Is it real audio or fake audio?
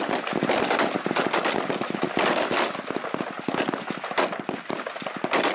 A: real